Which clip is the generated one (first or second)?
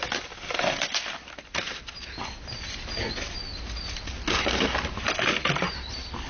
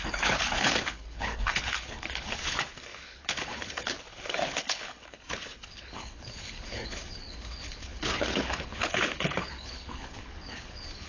second